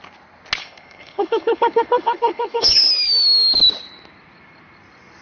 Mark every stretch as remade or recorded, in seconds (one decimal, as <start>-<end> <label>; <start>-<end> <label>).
0.0-0.6 recorded; 0.6-2.9 remade; 2.9-5.2 recorded